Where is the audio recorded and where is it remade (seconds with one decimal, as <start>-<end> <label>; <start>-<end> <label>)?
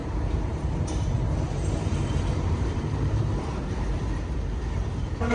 0.0-3.2 remade; 3.2-5.3 recorded